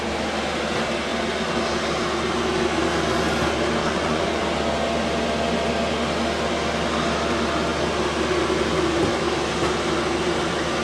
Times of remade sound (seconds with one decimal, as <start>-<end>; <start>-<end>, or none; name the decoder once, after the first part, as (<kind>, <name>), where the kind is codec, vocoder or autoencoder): 3.8-4.4 (vocoder, Vocos)